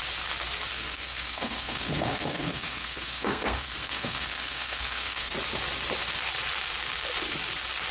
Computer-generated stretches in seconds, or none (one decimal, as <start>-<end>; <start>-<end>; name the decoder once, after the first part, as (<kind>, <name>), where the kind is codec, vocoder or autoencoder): 0.7-5.3 (codec, SNAC)